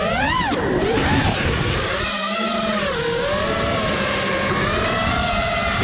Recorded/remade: remade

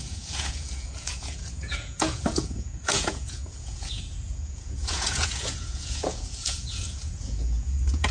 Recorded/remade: remade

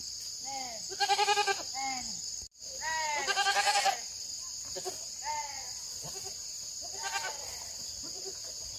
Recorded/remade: remade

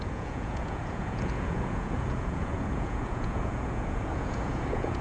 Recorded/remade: remade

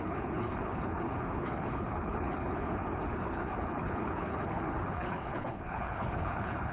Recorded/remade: remade